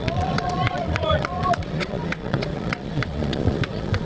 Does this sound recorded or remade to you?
remade